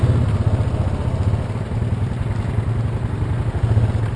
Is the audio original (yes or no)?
yes